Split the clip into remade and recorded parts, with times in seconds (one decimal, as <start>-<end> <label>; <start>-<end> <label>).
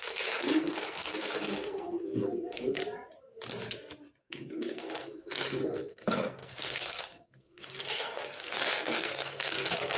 0.0-2.8 remade; 2.8-4.2 recorded; 4.2-10.0 remade